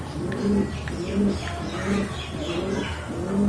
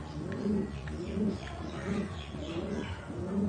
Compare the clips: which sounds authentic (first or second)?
first